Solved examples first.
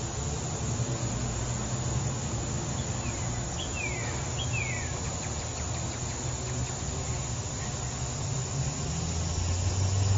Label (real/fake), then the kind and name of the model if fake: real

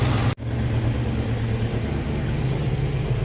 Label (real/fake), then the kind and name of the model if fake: real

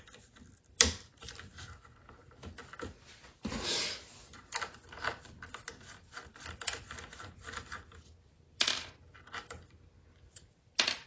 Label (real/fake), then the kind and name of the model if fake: fake, vocoder, BigVGAN v2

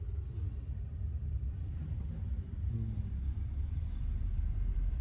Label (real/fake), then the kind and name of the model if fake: fake, vocoder, BigVGAN v2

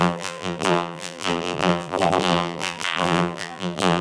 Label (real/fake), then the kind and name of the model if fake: fake, vocoder, BigVGAN v2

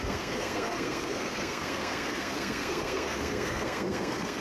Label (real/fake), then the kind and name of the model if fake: fake, codec, SNAC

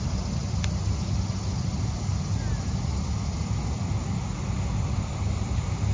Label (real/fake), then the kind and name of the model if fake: real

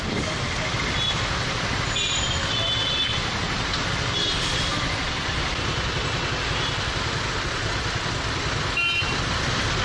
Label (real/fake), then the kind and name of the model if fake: real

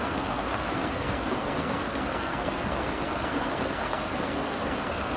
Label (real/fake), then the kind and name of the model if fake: fake, codec, SNAC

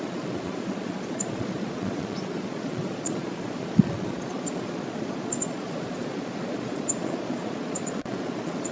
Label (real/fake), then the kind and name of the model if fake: fake, vocoder, Vocos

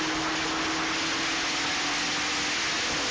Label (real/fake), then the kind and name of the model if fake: real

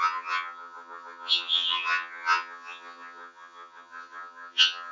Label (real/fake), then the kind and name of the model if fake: fake, vocoder, HiFi-GAN